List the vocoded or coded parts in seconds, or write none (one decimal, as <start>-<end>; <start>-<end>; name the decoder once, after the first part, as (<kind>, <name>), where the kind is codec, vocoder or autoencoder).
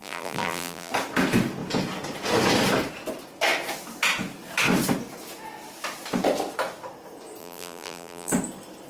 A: 0.0-0.9 (vocoder, BigVGAN v2); 7.4-8.3